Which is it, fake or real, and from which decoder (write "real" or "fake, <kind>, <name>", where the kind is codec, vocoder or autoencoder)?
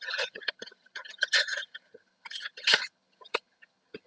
fake, vocoder, HiFi-GAN